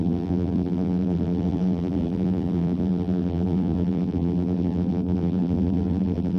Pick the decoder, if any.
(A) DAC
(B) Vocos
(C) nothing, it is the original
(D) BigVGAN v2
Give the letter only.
D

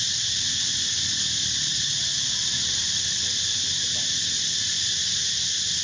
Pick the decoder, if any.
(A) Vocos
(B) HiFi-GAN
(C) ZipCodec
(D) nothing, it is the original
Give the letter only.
D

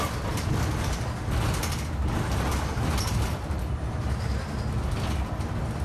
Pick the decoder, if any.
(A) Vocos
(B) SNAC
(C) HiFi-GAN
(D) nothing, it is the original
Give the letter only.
D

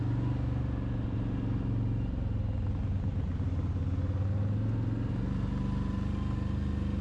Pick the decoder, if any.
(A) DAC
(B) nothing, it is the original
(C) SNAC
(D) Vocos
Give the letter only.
B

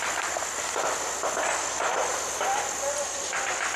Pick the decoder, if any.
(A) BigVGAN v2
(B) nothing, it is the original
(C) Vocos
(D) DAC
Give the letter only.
B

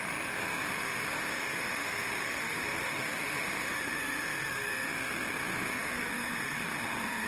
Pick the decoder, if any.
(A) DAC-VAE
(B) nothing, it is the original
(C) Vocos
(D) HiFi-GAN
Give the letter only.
A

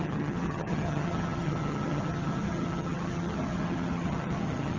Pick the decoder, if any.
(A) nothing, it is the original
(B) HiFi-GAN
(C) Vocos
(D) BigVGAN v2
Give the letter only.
B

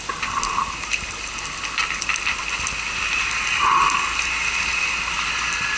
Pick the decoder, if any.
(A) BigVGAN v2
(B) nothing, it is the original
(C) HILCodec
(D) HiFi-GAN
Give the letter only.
B